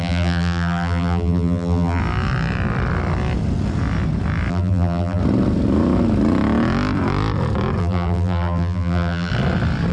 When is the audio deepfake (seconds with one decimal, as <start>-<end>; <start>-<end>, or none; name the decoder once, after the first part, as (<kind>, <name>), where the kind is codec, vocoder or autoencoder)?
0.0-2.0 (vocoder, BigVGAN v2); 4.5-5.2; 7.8-9.3